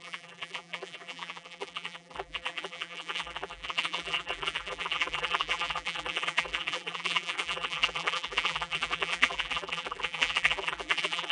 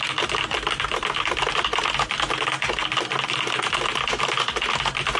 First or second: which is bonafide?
second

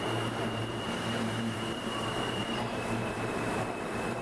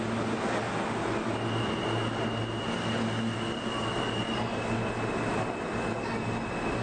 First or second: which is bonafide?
second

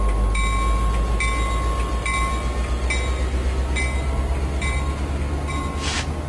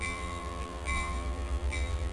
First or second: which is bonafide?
first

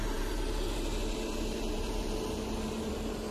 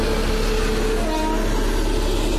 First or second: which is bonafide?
second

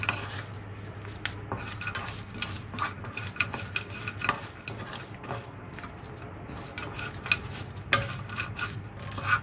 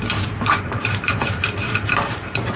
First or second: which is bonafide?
first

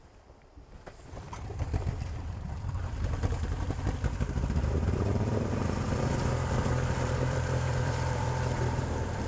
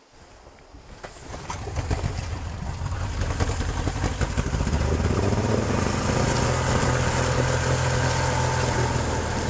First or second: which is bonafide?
second